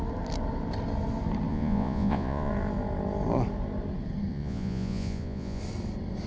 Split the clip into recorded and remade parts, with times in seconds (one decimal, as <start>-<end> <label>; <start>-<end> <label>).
0.0-1.5 recorded; 1.5-2.5 remade; 2.5-4.3 recorded; 4.3-5.6 remade; 5.6-6.3 recorded